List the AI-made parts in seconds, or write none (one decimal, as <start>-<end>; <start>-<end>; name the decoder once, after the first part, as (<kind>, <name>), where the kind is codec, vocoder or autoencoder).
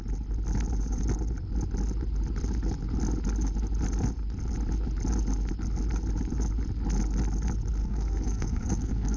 7.8-9.2 (codec, SNAC)